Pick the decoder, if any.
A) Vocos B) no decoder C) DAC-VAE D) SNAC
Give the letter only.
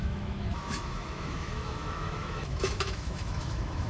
C